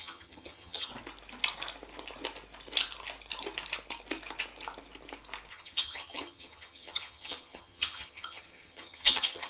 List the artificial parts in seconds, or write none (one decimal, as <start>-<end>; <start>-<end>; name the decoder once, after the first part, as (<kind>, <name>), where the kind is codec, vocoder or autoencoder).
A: 0.0-0.9 (vocoder, HiFi-GAN); 5.5-9.5